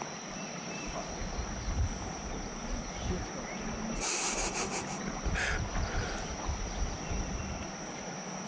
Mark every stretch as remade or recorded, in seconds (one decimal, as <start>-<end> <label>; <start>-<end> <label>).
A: 0.0-5.7 recorded; 5.7-7.4 remade; 7.4-8.5 recorded

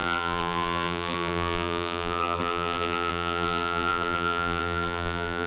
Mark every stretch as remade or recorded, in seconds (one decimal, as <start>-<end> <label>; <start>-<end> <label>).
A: 0.0-5.5 remade

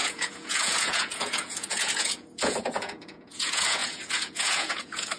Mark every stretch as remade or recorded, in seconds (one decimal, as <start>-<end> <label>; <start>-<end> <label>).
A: 0.0-5.2 remade

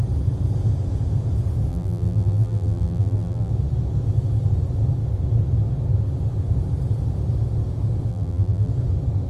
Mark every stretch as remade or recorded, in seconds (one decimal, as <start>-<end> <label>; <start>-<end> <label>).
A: 0.0-1.7 recorded; 1.7-3.5 remade; 3.5-8.1 recorded; 8.1-8.7 remade; 8.7-9.3 recorded

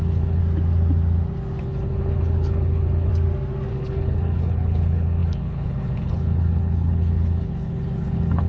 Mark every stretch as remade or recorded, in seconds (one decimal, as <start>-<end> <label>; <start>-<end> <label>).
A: 0.0-0.4 remade; 0.4-1.6 recorded; 1.6-3.1 remade; 3.1-3.7 recorded; 3.7-8.5 remade

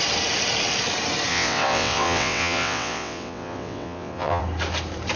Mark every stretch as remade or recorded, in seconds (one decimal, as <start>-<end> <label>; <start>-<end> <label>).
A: 0.0-1.3 recorded; 1.3-4.4 remade; 4.4-5.2 recorded